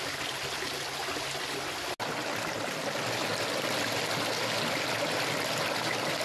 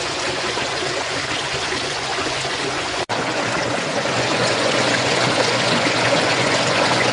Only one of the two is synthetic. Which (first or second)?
second